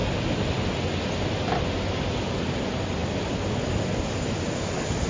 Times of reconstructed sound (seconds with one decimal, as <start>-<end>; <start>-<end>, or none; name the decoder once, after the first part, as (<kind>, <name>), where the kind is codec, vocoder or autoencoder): none